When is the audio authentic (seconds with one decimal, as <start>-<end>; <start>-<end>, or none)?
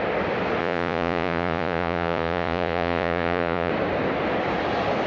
0.0-0.6; 3.7-5.1